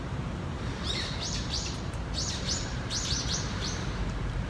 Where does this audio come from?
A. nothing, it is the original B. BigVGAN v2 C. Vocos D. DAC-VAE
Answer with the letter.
B